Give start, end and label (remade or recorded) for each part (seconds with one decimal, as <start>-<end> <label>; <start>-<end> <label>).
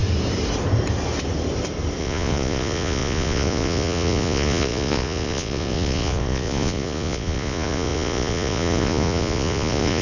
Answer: 0.0-2.0 recorded; 2.0-10.0 remade